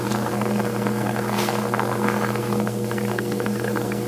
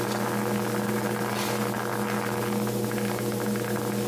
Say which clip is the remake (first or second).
first